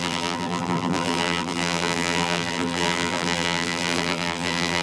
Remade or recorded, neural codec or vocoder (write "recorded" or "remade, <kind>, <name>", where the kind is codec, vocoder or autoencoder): remade, vocoder, BigVGAN v2